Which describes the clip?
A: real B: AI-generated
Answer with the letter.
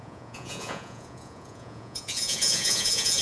B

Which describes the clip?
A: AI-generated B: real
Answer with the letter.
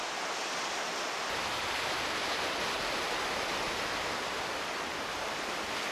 B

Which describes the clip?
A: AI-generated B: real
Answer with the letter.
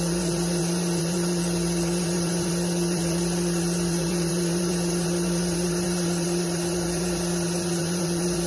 A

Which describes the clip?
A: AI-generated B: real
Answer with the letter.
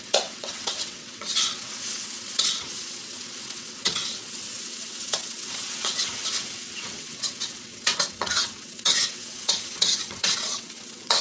A